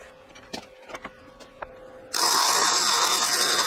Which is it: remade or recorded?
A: recorded